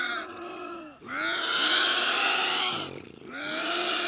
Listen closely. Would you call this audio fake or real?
real